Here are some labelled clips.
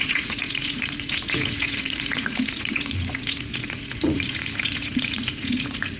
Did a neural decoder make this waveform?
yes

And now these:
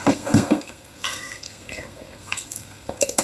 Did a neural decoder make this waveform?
yes